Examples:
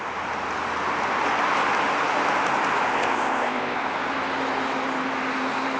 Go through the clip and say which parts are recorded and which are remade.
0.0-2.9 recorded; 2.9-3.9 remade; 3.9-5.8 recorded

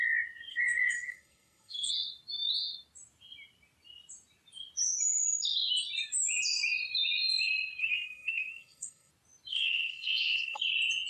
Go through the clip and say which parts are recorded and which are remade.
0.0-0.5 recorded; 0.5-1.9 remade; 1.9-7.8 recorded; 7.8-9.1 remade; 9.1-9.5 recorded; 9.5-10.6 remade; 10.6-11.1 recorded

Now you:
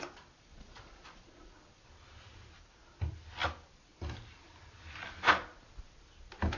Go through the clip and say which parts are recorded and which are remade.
0.0-0.5 recorded; 0.5-1.9 remade; 1.9-6.6 recorded

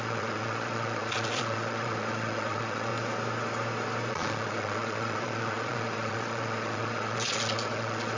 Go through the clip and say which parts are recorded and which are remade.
0.0-2.9 remade; 2.9-4.1 recorded; 4.1-8.2 remade